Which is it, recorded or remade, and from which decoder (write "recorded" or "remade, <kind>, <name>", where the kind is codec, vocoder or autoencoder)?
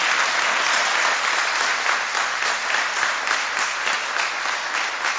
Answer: recorded